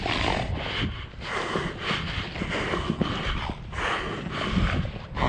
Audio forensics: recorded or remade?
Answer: recorded